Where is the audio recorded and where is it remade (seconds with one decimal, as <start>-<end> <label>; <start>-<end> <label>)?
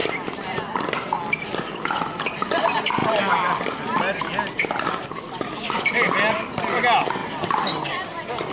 0.0-8.5 recorded